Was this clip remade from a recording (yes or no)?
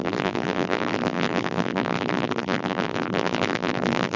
yes